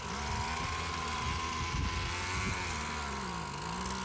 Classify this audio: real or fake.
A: real